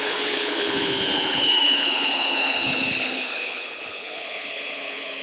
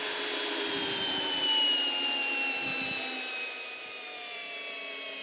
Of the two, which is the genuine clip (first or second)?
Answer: second